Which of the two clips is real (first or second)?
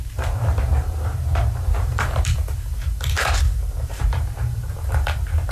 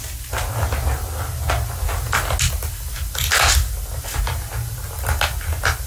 second